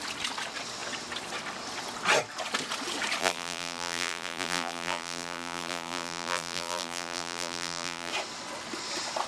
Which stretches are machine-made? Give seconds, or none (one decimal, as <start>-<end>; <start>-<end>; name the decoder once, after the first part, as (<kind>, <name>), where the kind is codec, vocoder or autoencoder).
3.2-8.1 (vocoder, BigVGAN v2)